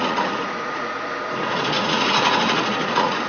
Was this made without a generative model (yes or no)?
no